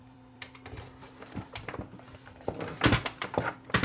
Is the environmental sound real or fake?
fake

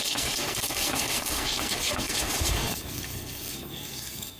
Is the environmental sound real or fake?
fake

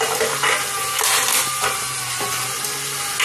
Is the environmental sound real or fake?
real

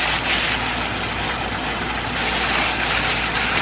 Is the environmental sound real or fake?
real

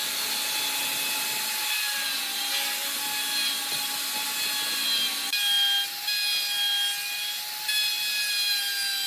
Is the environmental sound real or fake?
real